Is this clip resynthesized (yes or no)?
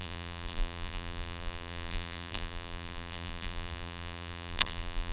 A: yes